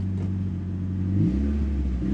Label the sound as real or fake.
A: real